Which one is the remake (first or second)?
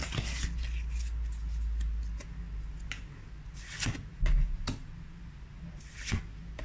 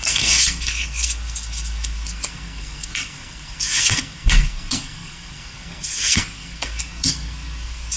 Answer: second